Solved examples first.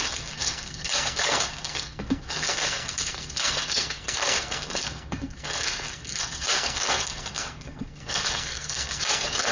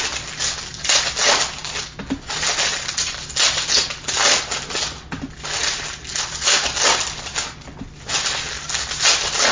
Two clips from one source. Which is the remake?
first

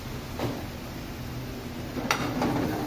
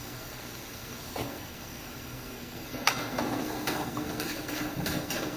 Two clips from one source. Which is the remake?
second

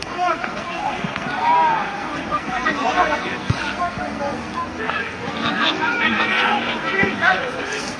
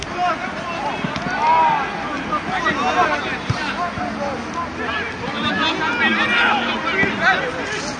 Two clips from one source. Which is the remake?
first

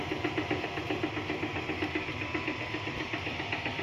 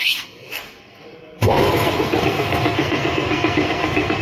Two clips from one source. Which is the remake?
second